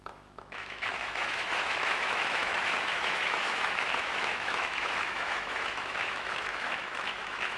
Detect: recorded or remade remade